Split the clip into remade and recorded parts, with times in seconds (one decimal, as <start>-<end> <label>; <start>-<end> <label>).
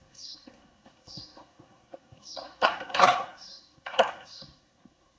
0.0-5.2 remade